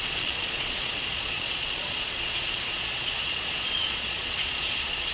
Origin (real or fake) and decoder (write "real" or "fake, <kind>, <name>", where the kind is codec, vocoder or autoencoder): fake, vocoder, Vocos